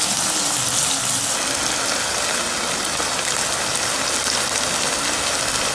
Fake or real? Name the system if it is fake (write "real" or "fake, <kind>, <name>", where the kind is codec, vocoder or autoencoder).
real